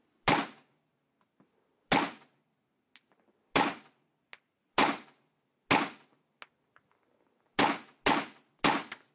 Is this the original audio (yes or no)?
yes